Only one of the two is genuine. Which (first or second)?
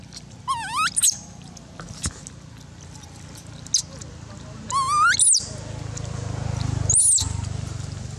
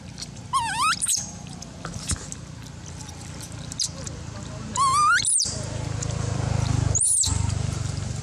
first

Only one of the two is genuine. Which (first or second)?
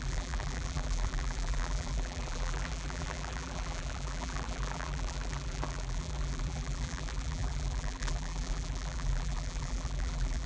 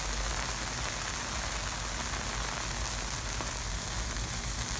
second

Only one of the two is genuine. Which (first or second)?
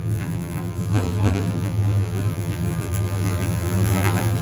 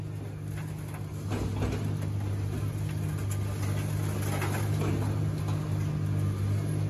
second